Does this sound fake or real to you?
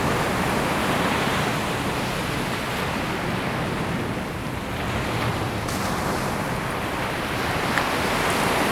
real